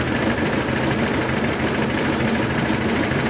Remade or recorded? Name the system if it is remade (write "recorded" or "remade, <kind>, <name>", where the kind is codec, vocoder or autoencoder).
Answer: recorded